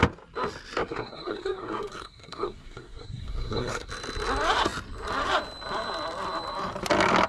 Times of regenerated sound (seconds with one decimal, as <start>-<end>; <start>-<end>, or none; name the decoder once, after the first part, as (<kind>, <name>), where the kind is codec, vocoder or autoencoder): 0.8-3.9 (codec, SNAC)